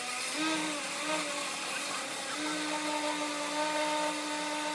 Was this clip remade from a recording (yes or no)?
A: no